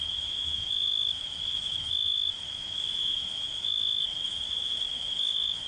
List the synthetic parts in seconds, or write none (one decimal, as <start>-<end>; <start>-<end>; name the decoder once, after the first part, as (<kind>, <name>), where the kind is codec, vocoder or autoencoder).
0.0-5.7 (autoencoder, DAC-VAE)